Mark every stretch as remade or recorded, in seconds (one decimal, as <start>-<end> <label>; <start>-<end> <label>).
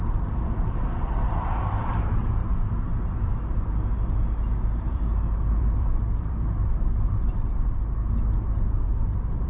0.0-2.4 remade; 2.4-4.6 recorded; 4.6-9.5 remade